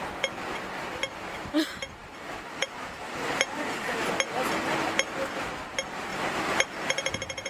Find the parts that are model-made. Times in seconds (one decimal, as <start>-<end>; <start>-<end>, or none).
2.1-3.1; 6.1-7.5